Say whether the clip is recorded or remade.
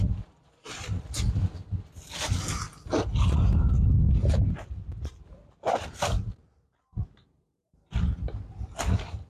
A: recorded